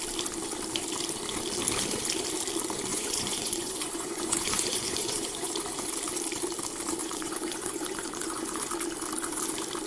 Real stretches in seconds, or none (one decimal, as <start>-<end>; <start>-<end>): 0.0-2.9; 5.5-7.0; 8.7-9.9